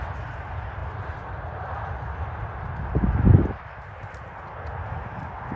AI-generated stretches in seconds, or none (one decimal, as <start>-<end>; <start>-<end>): none